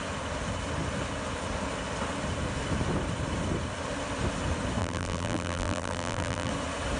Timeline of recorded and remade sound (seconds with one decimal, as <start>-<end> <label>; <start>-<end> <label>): 0.0-4.8 recorded; 4.8-6.5 remade; 6.5-7.0 recorded

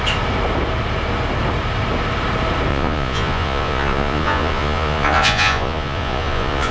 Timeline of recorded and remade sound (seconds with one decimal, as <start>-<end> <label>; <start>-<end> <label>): 0.0-2.7 recorded; 2.7-6.7 remade